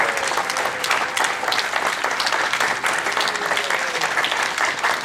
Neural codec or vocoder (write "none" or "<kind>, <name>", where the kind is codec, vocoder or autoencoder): none